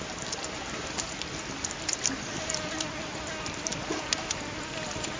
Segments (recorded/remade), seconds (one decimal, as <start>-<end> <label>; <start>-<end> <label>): 0.0-5.2 recorded